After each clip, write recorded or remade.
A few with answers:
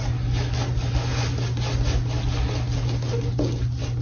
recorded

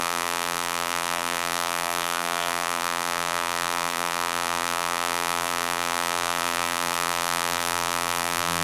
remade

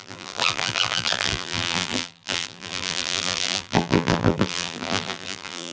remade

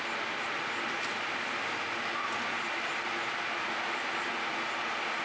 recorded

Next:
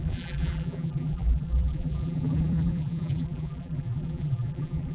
remade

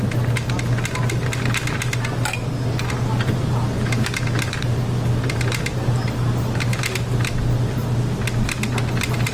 recorded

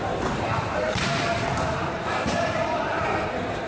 remade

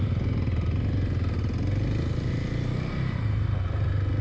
recorded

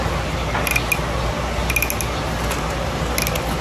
recorded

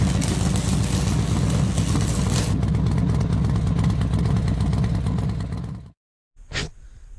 recorded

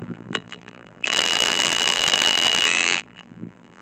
remade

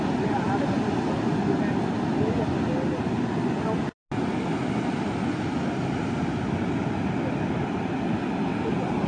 recorded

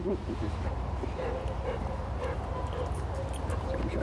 remade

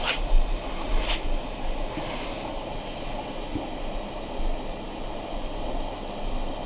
recorded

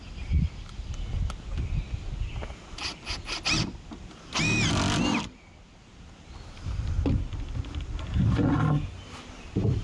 recorded